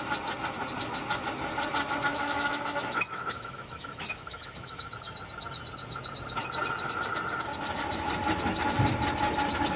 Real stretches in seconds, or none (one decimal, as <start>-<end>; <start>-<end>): 0.0-2.1; 4.9-9.8